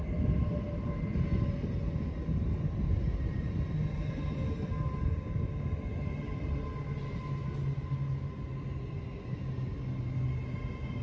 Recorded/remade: recorded